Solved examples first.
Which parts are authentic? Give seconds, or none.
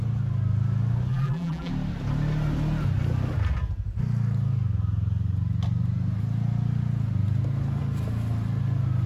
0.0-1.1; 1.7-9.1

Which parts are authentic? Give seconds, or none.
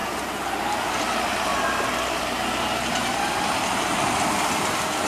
0.0-5.1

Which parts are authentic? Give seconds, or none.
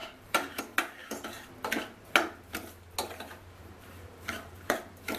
0.6-1.0; 1.5-3.0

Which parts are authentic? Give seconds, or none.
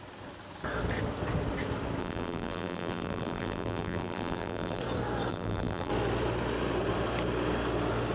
0.0-2.0; 4.8-5.3; 5.9-8.1